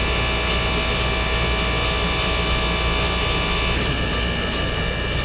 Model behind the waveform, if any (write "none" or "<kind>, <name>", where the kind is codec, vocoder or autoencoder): none